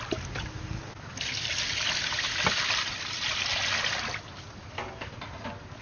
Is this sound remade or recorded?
recorded